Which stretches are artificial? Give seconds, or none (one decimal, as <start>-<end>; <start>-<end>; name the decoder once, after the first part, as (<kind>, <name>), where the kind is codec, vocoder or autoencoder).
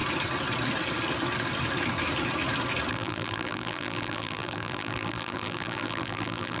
2.9-6.6 (vocoder, BigVGAN v2)